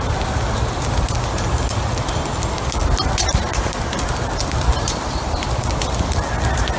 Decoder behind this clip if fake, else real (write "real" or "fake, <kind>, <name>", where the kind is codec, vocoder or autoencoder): real